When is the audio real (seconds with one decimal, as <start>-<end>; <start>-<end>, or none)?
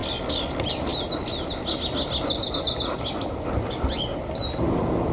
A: 0.0-5.1